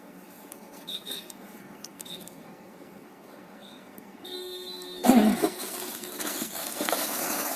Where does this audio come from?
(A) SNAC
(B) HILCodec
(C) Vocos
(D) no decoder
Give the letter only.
A